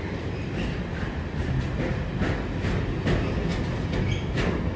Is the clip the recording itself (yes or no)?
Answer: yes